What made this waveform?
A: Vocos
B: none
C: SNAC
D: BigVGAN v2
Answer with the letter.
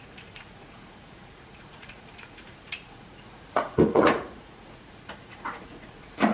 A